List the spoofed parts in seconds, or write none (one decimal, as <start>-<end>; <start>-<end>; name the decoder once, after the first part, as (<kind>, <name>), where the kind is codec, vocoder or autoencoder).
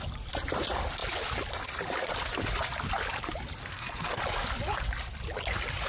3.6-4.2 (codec, SNAC)